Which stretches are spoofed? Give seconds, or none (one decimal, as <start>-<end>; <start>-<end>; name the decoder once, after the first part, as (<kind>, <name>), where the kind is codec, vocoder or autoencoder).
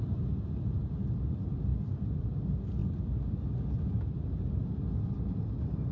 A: none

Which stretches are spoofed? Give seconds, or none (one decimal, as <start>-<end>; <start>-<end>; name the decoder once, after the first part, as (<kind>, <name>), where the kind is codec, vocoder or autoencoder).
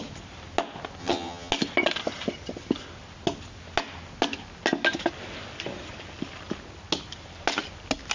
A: 1.0-1.5 (vocoder, HiFi-GAN)